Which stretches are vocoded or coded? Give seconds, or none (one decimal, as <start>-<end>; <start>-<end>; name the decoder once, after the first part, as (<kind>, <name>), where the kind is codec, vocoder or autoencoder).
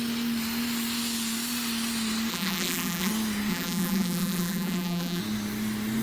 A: 2.3-3.1 (vocoder, BigVGAN v2); 3.5-5.2